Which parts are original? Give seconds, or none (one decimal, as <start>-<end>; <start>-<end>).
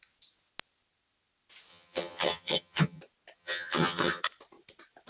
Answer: 0.0-1.7; 3.0-3.4; 4.2-5.1